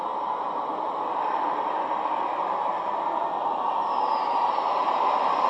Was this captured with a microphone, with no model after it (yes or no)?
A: yes